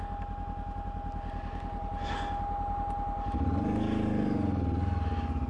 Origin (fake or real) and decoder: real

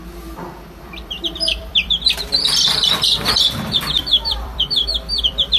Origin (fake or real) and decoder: fake, vocoder, BigVGAN v2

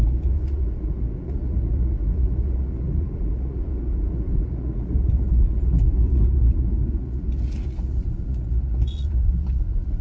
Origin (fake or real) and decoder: fake, vocoder, Vocos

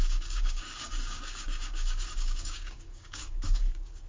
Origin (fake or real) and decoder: fake, codec, DAC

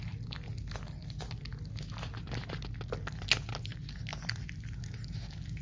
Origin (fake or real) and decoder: real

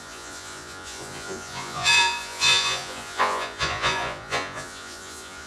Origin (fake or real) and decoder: fake, vocoder, Vocos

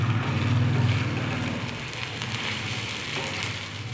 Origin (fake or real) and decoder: real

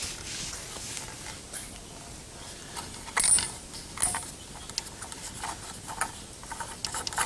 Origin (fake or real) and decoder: real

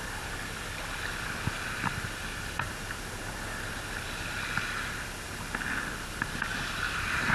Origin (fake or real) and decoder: fake, vocoder, BigVGAN v2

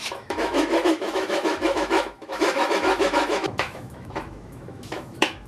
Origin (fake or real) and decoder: fake, autoencoder, DAC-VAE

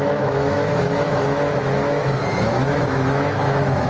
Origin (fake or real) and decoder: fake, autoencoder, DAC-VAE